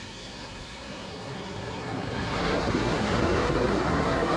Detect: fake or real fake